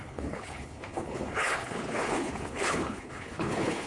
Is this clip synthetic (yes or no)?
yes